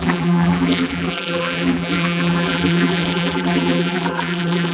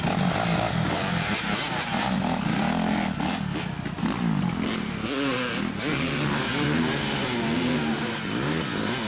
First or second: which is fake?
first